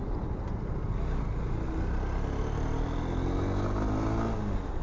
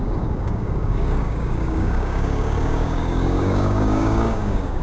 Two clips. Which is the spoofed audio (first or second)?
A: second